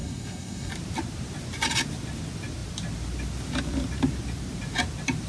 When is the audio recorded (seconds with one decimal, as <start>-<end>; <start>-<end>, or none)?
0.7-5.3